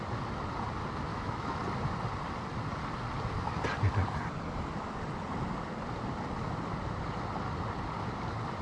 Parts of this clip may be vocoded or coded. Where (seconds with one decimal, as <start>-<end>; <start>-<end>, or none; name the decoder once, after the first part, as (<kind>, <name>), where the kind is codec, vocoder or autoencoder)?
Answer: 1.1-1.6 (autoencoder, DAC-VAE)